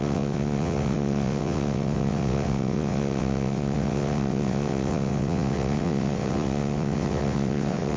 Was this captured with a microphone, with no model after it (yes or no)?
no